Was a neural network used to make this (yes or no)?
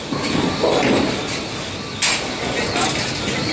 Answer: no